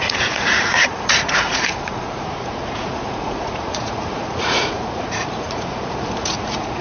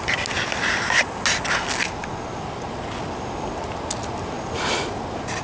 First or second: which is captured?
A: second